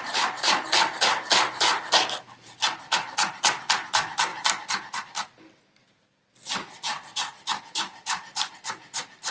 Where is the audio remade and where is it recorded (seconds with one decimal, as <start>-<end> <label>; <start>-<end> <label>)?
0.0-4.3 recorded; 4.3-5.3 remade; 5.3-7.9 recorded; 7.9-8.5 remade; 8.5-9.3 recorded